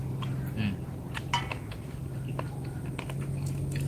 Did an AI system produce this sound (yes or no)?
no